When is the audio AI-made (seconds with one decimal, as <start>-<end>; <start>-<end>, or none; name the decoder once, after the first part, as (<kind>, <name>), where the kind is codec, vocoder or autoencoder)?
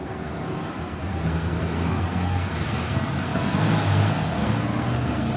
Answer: 0.0-5.4 (codec, SNAC)